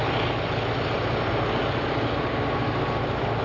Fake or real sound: real